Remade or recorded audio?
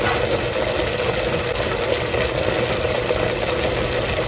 recorded